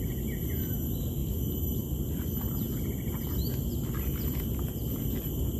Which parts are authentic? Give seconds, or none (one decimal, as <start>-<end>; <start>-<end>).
0.0-5.6